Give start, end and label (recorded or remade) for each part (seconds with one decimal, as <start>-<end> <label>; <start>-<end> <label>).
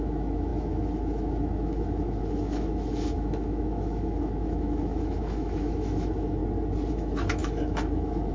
0.0-6.4 remade; 6.4-6.9 recorded; 6.9-8.3 remade